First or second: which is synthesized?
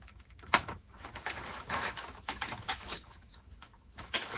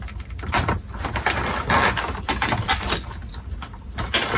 first